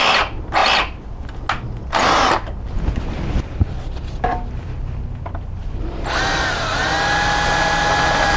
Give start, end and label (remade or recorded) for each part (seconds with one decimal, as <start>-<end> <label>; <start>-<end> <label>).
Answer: 0.0-8.4 recorded